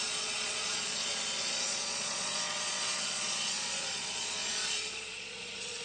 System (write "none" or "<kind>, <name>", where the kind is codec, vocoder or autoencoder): vocoder, Vocos